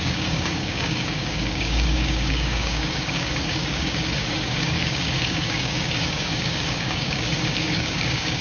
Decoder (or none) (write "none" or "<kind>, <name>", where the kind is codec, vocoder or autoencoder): codec, DAC